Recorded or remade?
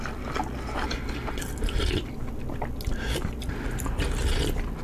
recorded